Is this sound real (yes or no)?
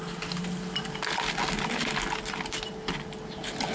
yes